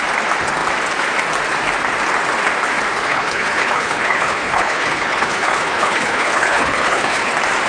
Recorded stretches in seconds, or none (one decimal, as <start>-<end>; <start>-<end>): 0.0-2.9; 7.3-7.7